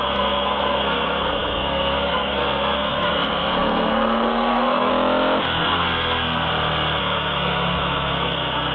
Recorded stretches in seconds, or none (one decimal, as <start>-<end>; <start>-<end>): 4.9-5.4; 6.5-7.0